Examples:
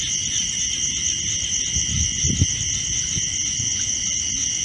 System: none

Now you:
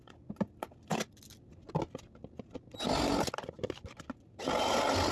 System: none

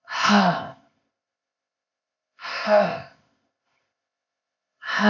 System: codec, ZipCodec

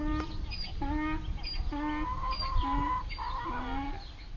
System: none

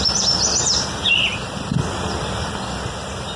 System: vocoder, BigVGAN v2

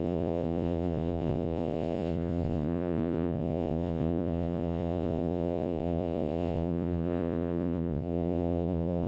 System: vocoder, Vocos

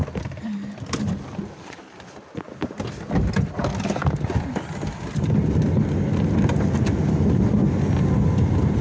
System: none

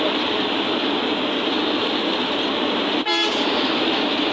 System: vocoder, BigVGAN v2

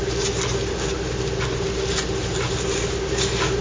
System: none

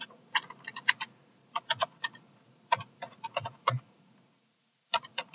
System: vocoder, Vocos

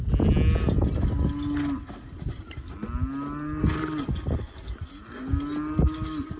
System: none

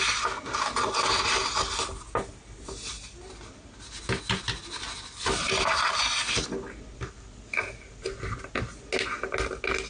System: none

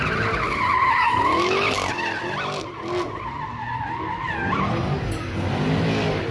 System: none